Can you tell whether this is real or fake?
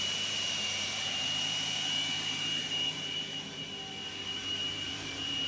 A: fake